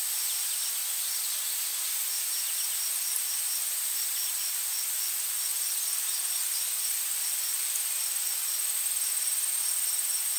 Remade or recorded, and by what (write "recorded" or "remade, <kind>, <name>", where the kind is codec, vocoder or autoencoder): recorded